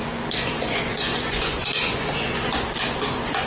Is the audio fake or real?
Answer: fake